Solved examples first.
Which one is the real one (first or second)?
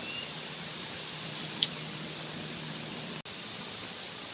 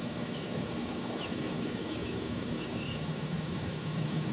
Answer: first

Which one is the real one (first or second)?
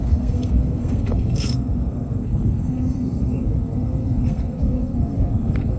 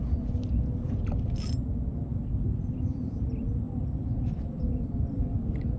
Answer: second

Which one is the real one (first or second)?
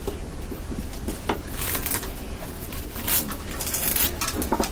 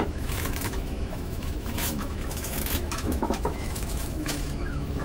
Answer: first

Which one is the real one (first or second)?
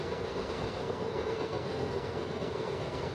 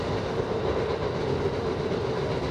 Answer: second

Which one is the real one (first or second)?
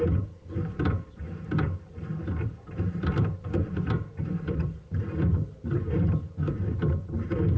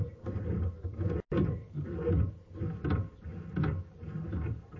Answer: second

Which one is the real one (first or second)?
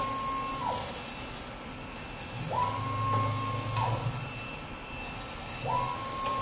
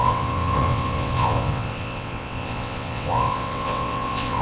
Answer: first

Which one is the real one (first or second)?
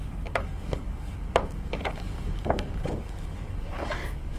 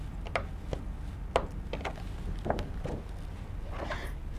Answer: second